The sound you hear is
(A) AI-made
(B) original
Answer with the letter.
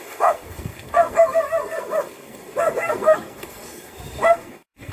A